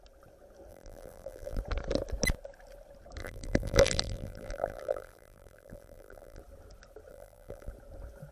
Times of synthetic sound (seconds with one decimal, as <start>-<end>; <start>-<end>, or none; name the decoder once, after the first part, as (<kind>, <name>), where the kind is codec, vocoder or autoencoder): 0.7-1.6 (vocoder, BigVGAN v2); 3.2-6.4; 7.1-7.7